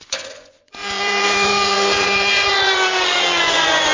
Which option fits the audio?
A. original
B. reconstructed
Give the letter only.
B